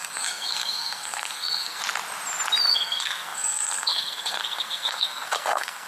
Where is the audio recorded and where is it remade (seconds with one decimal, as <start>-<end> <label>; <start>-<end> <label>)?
0.0-1.8 remade; 1.8-2.7 recorded; 2.7-5.9 remade